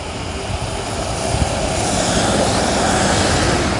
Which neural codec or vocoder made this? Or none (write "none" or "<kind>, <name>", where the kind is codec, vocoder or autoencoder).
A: none